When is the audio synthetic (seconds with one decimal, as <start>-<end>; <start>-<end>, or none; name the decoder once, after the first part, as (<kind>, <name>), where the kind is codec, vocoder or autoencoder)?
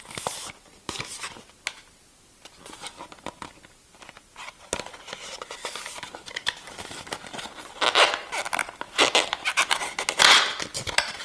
none